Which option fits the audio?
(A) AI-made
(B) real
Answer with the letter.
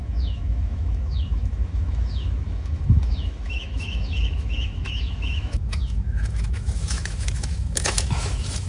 A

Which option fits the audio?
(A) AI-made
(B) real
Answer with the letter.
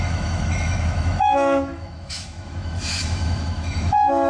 A